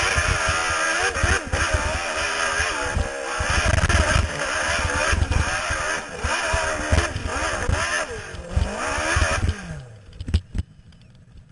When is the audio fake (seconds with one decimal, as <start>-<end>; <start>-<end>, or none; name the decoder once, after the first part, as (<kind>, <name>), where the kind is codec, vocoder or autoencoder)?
5.0-5.6 (vocoder, BigVGAN v2)